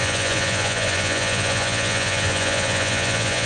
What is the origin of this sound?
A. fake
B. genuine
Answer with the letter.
A